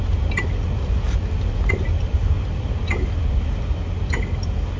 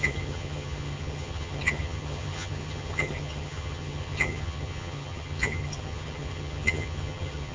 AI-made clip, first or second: second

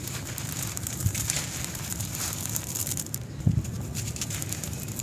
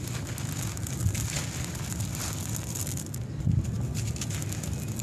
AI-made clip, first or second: first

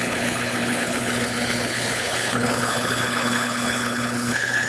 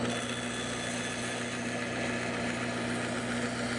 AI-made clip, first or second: first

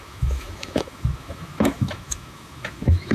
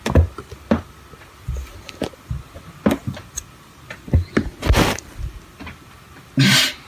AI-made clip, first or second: first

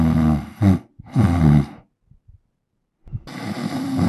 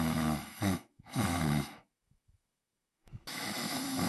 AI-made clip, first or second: second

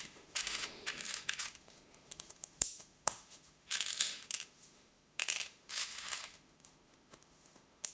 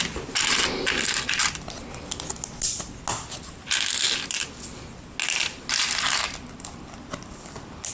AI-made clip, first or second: first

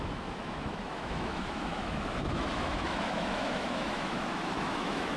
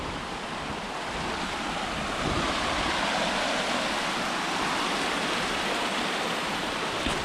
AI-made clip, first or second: first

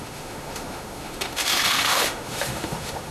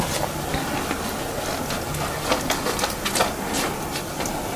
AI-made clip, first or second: first